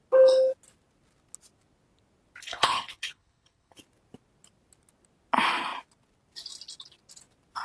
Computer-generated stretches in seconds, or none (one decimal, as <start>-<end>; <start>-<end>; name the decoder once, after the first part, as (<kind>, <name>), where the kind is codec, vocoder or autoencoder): 2.4-3.8 (codec, HILCodec)